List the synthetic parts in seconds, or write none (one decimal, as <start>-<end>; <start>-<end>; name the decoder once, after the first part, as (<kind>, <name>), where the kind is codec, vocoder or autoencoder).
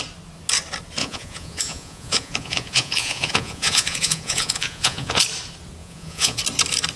1.0-5.2 (vocoder, Vocos); 5.8-6.4